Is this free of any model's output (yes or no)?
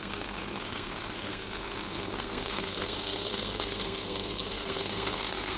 no